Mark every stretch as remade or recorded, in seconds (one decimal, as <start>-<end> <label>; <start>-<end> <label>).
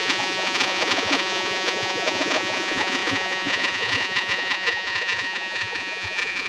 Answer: 0.0-6.5 remade